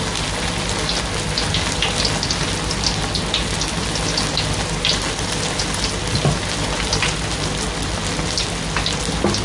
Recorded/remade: recorded